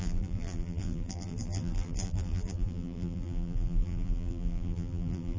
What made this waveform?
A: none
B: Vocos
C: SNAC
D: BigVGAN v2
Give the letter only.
D